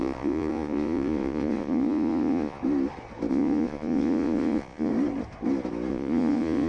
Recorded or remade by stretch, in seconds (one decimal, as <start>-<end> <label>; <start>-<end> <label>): 0.0-2.6 remade; 2.6-3.3 recorded; 3.3-4.9 remade; 4.9-5.9 recorded; 5.9-6.7 remade